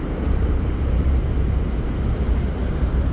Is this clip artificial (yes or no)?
yes